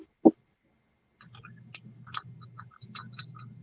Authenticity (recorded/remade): recorded